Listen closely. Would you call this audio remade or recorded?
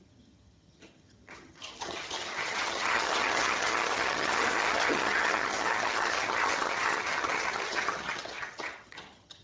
remade